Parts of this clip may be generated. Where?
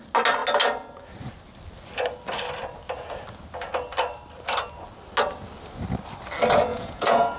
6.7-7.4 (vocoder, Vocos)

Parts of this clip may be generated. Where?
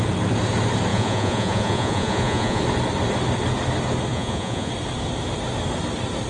0.9-2.6 (vocoder, Vocos); 4.1-4.7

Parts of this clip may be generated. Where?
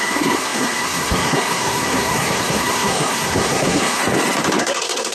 0.0-4.0 (codec, SNAC); 4.6-5.1